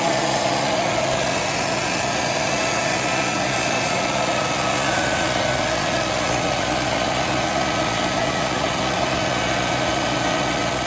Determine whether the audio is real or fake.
fake